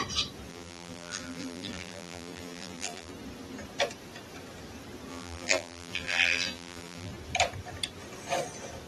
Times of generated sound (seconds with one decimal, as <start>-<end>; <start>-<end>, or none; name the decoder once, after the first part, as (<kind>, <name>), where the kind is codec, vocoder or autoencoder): 0.5-3.1 (vocoder, BigVGAN v2); 5.1-7.1